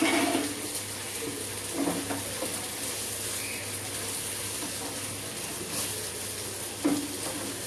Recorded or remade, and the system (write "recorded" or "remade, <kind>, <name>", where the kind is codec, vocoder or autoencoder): recorded